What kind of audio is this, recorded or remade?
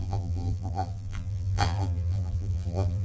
remade